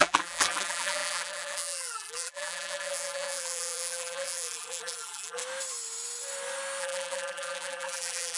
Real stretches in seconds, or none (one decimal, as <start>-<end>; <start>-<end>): 5.4-6.8